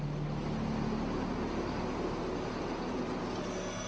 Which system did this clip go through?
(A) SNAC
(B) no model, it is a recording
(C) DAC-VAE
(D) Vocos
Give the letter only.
B